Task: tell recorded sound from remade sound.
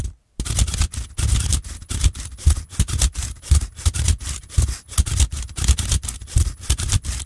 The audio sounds recorded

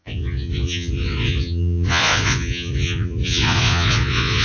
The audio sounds remade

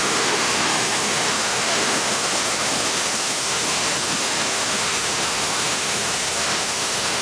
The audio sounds remade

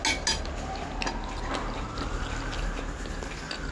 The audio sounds recorded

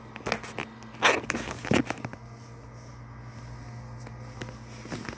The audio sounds recorded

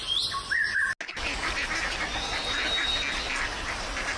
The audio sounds recorded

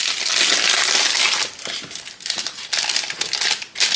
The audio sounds recorded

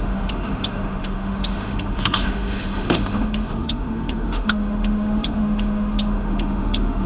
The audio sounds remade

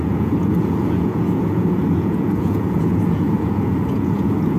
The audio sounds remade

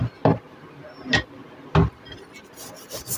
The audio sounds recorded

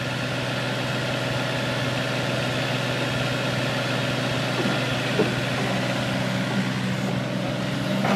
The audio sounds recorded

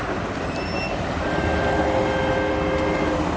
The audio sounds recorded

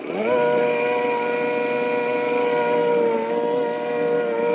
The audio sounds recorded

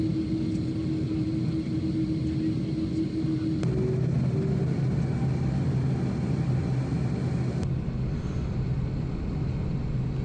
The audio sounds recorded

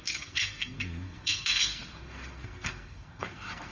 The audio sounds remade